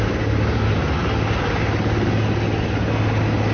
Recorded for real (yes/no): yes